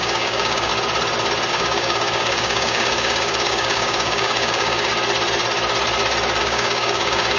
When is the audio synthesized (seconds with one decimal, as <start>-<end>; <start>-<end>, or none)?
0.0-0.7; 1.5-4.9; 6.4-7.4